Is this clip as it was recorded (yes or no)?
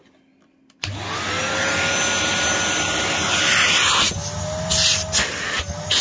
yes